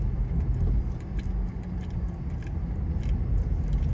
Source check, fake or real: real